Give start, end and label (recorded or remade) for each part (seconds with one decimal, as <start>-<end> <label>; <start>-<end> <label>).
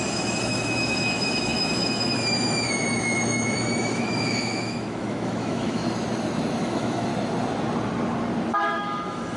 0.0-6.0 remade; 6.0-6.6 recorded; 6.6-7.1 remade; 7.1-8.5 recorded; 8.5-9.4 remade